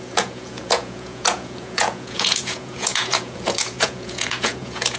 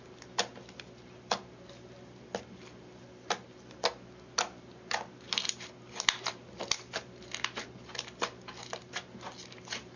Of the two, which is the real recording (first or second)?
second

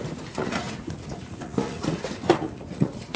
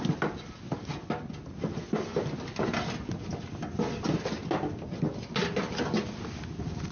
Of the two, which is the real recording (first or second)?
second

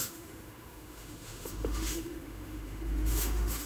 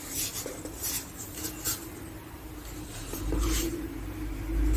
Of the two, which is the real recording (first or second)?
second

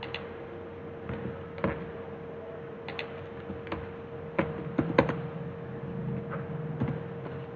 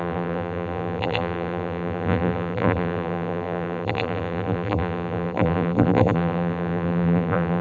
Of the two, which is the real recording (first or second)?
first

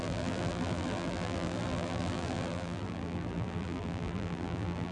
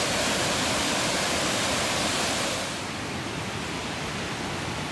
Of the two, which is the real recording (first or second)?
second